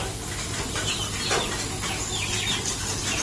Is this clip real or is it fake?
real